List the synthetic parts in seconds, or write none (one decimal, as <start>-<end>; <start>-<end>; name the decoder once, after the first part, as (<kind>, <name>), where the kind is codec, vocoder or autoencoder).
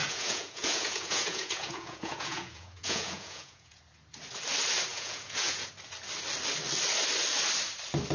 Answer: 0.0-3.8 (vocoder, Vocos); 4.9-5.7